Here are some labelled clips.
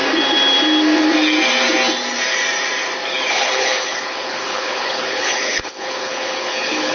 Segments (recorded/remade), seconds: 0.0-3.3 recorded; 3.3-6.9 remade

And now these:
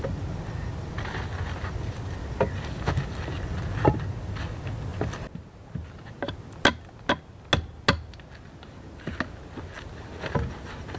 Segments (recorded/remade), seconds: 0.0-11.0 recorded

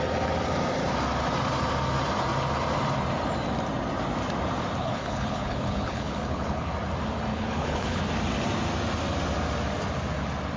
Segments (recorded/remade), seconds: 0.0-4.8 recorded; 4.8-6.7 remade; 6.7-7.3 recorded; 7.3-8.0 remade; 8.0-10.6 recorded